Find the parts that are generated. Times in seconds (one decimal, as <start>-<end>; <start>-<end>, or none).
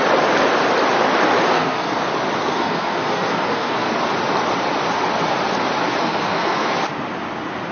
1.5-2.0; 2.5-3.9; 6.0-6.7